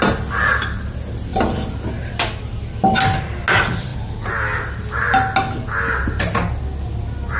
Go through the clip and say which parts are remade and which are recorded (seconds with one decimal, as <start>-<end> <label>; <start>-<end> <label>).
0.0-7.4 recorded